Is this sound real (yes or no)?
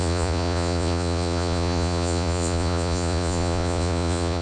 no